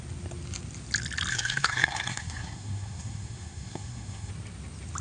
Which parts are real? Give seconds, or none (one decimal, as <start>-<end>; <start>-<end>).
0.0-1.3; 4.3-5.0